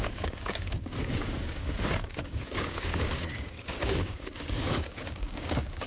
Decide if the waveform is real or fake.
fake